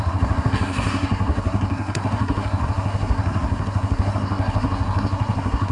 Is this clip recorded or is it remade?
remade